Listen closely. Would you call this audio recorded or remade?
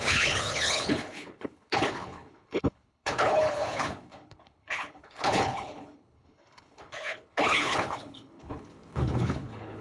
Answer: remade